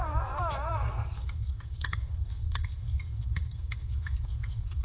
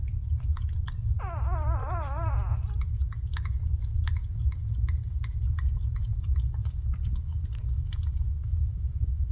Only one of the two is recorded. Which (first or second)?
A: second